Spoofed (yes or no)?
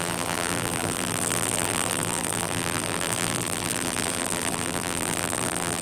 yes